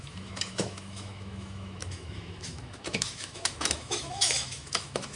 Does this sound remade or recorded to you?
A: remade